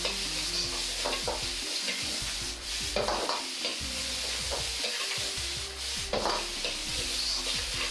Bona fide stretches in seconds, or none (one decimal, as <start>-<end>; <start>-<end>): 0.0-1.7; 2.9-3.7; 4.9-6.8; 7.4-7.9